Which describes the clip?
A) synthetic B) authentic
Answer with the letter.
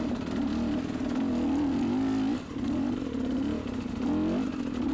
B